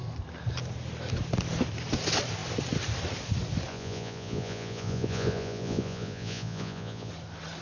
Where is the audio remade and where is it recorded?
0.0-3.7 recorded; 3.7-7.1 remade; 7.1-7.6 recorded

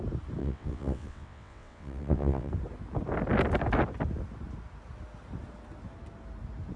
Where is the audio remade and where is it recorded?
0.0-0.4 recorded; 0.4-2.5 remade; 2.5-6.8 recorded

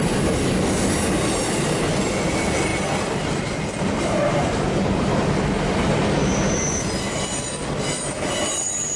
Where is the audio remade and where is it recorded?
0.0-9.0 recorded

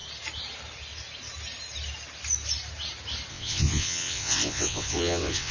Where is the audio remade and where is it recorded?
0.0-3.3 recorded; 3.3-5.5 remade

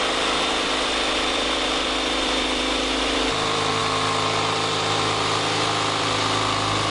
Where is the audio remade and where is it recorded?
0.0-3.8 remade; 3.8-6.9 recorded

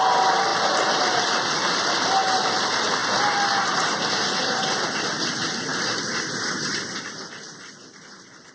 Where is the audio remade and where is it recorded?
0.0-8.5 recorded

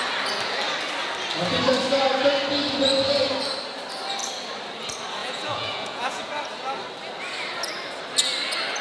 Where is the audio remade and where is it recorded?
0.0-5.2 recorded; 5.2-6.2 remade; 6.2-8.8 recorded

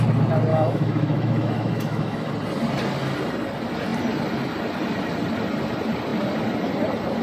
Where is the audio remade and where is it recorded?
0.0-0.5 recorded; 0.5-2.3 remade; 2.3-7.2 recorded